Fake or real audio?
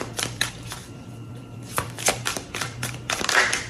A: fake